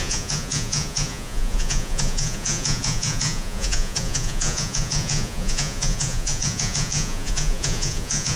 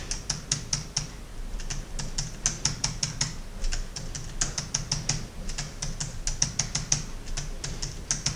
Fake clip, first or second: first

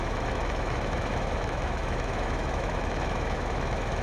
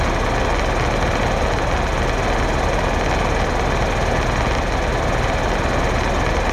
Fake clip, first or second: first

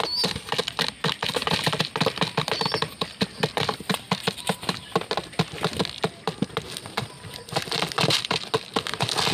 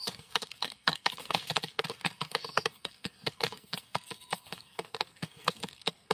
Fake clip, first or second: second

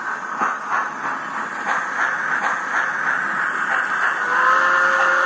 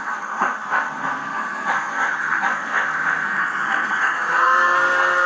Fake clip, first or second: second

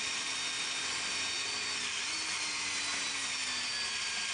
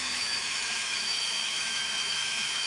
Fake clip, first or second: second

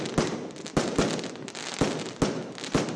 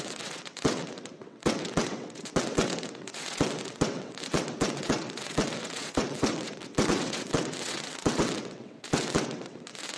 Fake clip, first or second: second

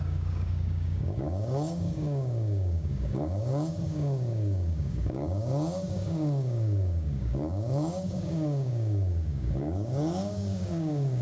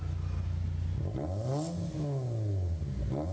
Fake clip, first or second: first